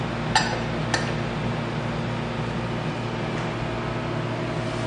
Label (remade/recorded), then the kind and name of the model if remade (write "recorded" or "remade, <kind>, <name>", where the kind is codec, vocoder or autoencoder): recorded